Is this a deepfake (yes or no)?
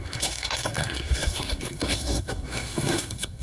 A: yes